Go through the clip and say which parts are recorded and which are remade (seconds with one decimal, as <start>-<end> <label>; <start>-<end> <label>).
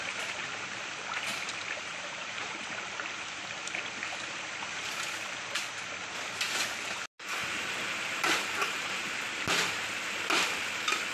0.0-1.3 recorded; 1.3-2.8 remade; 2.8-7.4 recorded; 7.4-9.1 remade; 9.1-11.1 recorded